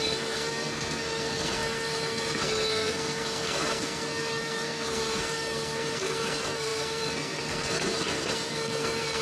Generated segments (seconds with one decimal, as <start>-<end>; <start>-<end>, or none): 0.0-9.2